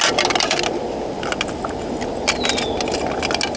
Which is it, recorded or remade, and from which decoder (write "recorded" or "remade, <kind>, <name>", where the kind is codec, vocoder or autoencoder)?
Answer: recorded